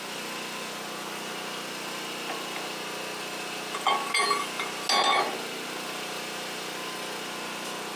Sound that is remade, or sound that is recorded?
recorded